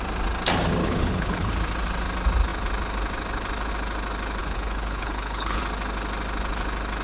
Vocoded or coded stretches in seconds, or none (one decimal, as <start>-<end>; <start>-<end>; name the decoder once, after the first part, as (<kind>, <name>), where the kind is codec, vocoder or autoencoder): 0.8-1.5 (codec, HILCodec); 4.4-5.6